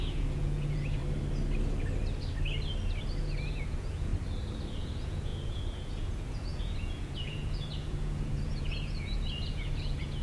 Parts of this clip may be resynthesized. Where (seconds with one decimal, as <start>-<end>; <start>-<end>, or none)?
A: 0.0-1.0; 3.2-4.1; 4.7-10.2